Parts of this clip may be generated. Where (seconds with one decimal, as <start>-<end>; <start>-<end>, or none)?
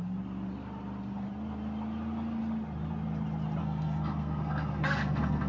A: 3.6-5.5